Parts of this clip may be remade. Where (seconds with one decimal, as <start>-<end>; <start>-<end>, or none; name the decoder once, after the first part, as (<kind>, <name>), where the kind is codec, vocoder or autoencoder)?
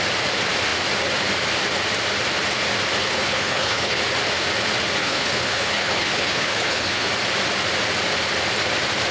3.0-4.0 (codec, HILCodec); 5.0-7.1